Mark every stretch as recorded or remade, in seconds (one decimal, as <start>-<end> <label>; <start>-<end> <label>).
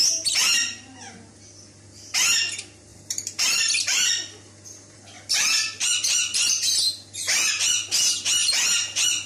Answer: 0.0-2.9 recorded; 2.9-7.5 remade; 7.5-8.4 recorded; 8.4-9.3 remade